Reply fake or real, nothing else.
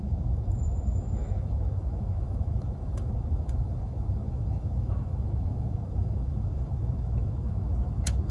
fake